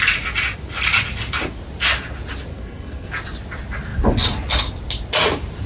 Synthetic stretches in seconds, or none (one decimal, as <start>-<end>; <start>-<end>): 2.5-3.1

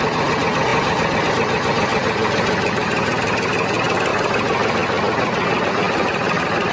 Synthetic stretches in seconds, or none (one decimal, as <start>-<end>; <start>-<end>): none

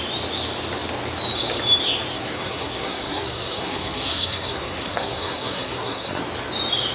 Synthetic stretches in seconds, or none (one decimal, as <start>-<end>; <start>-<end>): 2.1-6.2

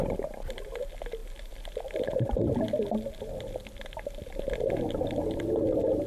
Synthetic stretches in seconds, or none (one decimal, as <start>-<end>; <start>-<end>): none

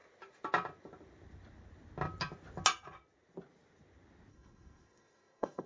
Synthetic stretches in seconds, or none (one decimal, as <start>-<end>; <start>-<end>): 4.3-5.7

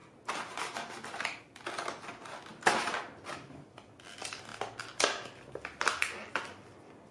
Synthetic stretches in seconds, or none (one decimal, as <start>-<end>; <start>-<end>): none